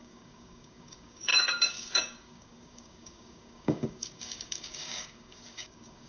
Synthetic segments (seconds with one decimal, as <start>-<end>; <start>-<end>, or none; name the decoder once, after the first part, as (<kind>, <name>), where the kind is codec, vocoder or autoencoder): 0.0-6.1 (codec, DAC)